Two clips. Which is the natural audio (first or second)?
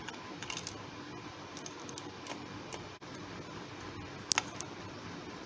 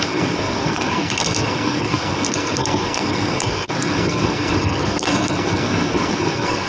first